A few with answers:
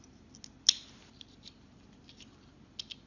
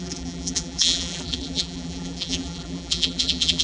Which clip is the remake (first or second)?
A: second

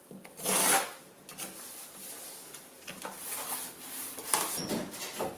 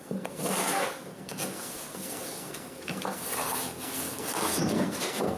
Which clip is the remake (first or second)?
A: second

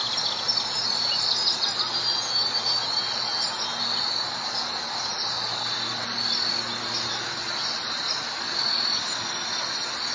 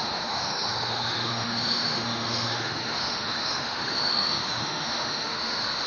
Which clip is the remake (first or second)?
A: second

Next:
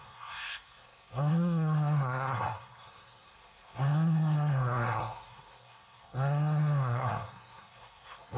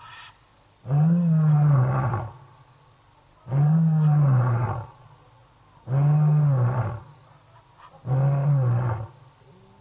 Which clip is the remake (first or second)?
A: first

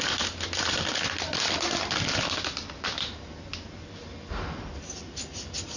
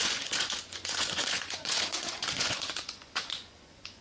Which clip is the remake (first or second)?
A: second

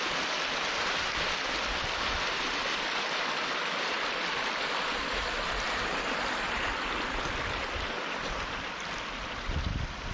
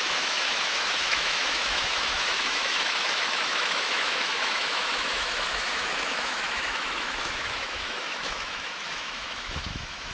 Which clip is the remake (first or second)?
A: second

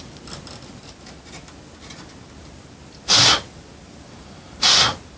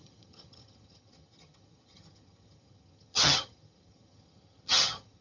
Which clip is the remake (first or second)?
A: second